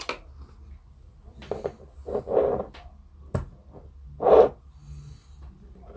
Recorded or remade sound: recorded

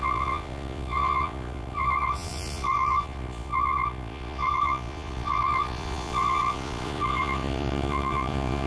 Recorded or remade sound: remade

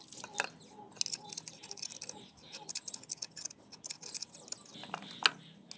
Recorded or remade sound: recorded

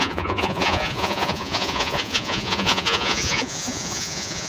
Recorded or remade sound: remade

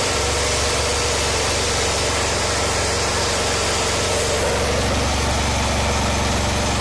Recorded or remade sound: recorded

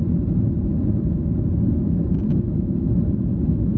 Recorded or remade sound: recorded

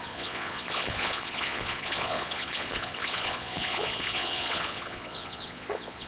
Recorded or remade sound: remade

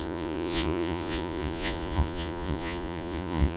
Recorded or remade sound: remade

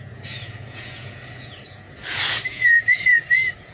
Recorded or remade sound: remade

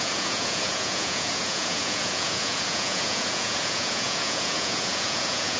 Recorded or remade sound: remade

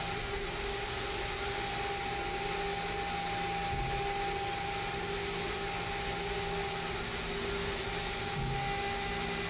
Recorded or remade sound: recorded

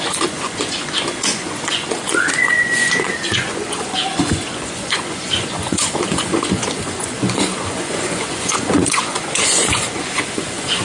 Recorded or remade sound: remade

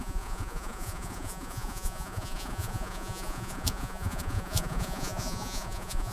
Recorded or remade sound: remade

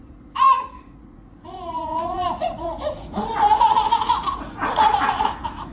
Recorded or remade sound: remade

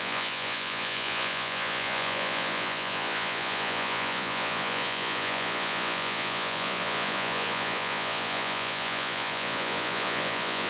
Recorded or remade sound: remade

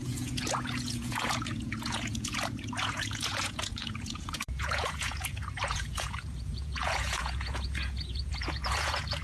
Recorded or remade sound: remade